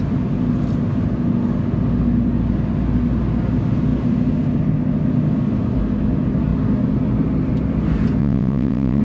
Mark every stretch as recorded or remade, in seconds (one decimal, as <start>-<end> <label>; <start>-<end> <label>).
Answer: 0.0-8.2 recorded; 8.2-9.0 remade